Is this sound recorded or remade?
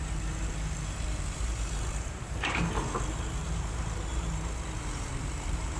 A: remade